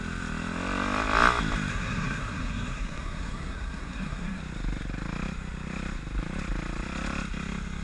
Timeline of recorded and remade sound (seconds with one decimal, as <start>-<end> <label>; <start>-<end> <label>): 0.0-1.7 recorded; 1.7-4.4 remade; 4.4-7.8 recorded